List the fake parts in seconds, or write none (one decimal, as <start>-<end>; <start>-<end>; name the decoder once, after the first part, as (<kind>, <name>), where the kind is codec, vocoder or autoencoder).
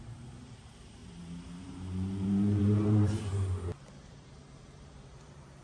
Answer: 0.0-1.0 (vocoder, BigVGAN v2); 1.6-3.3; 4.1-5.6